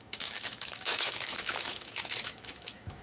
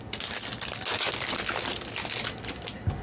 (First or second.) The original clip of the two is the second